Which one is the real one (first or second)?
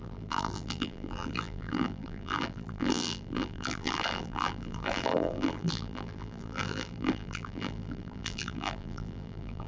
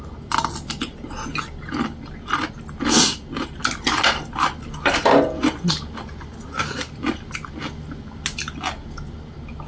second